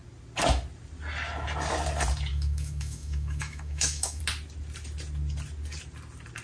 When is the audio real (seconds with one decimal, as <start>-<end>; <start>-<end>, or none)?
0.0-2.3; 4.2-6.4